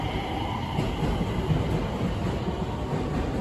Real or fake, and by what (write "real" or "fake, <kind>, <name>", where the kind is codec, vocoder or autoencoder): real